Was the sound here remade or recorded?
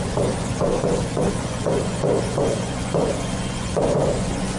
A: remade